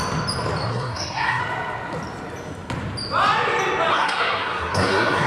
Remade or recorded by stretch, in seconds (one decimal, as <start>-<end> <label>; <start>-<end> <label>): 0.0-0.7 recorded; 0.7-1.4 remade; 1.4-3.9 recorded; 3.9-5.3 remade